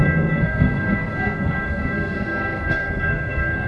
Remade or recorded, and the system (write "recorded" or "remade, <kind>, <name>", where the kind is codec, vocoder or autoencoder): remade, codec, SNAC